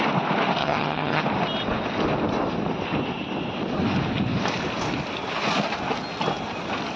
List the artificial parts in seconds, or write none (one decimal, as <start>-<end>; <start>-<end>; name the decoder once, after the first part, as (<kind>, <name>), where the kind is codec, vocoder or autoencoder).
0.6-1.2 (vocoder, HiFi-GAN)

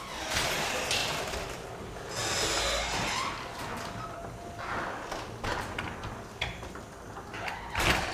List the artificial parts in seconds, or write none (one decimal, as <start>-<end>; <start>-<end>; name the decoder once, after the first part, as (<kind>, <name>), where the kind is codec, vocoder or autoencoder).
none

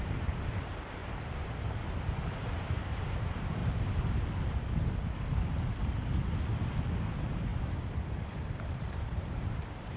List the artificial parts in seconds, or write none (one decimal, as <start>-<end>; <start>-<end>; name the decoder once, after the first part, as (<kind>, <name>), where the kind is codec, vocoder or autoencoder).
0.0-3.6 (vocoder, BigVGAN v2); 7.0-7.5; 8.4-10.0

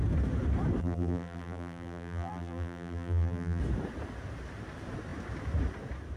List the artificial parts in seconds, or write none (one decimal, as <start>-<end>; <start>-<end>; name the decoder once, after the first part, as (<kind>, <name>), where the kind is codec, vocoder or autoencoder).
0.8-3.6 (vocoder, BigVGAN v2)